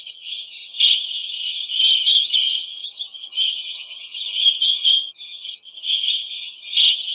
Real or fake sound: fake